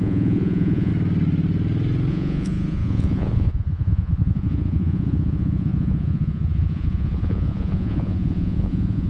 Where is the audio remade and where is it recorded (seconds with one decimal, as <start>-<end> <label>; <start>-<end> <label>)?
0.0-0.9 remade; 0.9-2.1 recorded; 2.1-9.1 remade